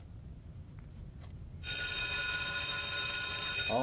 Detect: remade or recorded recorded